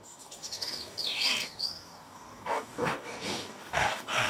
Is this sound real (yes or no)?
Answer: no